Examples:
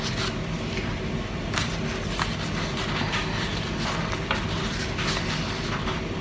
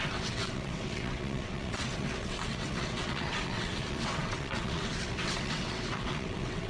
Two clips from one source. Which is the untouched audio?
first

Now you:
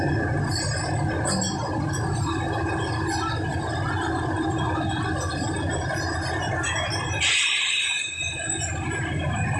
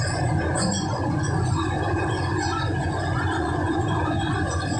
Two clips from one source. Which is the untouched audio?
first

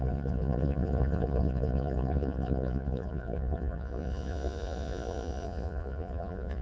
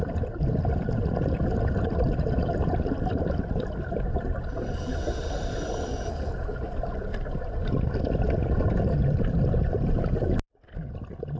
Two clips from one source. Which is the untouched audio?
second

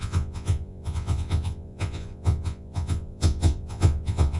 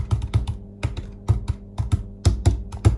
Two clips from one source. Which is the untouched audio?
second